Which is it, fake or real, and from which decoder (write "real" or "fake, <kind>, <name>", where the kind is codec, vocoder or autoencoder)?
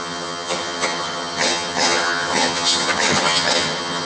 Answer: fake, vocoder, HiFi-GAN